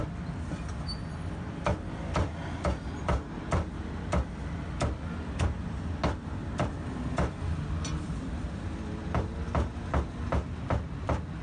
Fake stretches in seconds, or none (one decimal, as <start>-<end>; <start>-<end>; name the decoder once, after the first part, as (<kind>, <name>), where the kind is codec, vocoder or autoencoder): 6.4-8.6 (vocoder, BigVGAN v2)

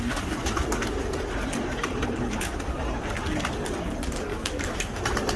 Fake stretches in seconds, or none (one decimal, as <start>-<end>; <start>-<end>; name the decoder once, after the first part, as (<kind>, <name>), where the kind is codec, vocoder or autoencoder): 4.3-5.0 (autoencoder, DAC-VAE)

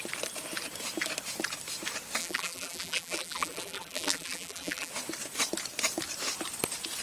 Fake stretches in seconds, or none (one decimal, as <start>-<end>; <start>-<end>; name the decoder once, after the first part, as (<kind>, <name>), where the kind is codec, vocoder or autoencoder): 2.2-4.9 (vocoder, BigVGAN v2)